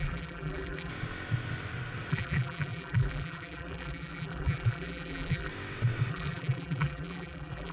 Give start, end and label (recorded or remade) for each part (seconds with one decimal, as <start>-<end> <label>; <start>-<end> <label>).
0.0-0.9 remade; 0.9-2.1 recorded; 2.1-5.5 remade; 5.5-6.1 recorded; 6.1-7.7 remade